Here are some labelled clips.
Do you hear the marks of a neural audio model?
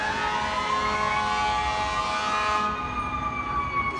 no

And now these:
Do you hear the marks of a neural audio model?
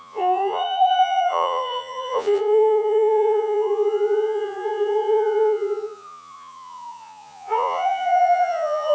yes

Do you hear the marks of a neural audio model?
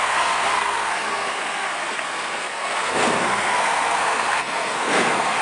yes